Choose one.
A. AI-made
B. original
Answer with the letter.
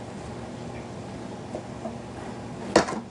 B